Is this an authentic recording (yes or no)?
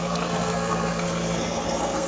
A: no